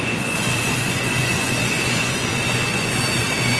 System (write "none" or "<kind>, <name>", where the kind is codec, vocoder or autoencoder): vocoder, Vocos